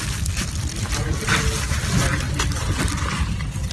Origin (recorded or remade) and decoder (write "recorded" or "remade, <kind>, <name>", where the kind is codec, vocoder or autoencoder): recorded